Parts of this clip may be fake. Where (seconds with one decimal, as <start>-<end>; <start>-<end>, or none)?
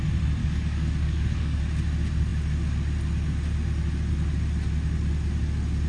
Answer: 0.4-1.6